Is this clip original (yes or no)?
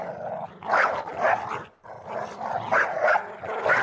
yes